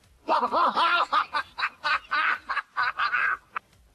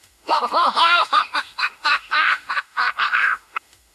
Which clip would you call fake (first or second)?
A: second